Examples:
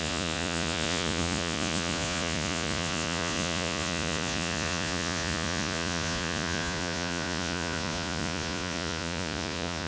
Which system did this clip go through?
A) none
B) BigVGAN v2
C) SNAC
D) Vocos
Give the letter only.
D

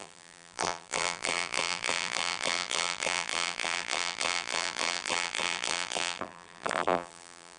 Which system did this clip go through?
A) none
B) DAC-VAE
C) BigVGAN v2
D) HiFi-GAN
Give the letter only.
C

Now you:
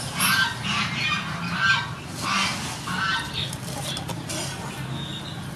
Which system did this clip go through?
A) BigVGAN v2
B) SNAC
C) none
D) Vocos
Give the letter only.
C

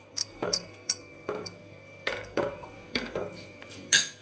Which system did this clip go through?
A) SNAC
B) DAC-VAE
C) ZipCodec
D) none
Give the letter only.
A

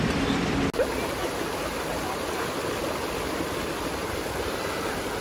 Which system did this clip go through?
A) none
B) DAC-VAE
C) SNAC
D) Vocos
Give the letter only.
A